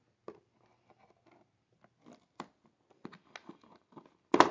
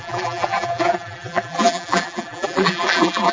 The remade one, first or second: second